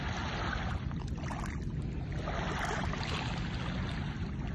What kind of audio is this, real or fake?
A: real